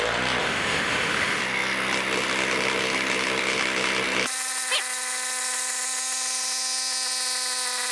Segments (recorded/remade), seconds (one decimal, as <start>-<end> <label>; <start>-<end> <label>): 0.0-0.4 recorded; 0.4-1.4 remade; 1.4-7.9 recorded